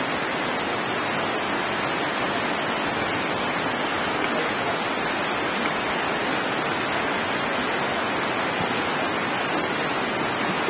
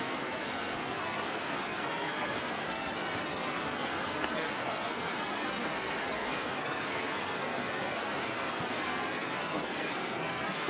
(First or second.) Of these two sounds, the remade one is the second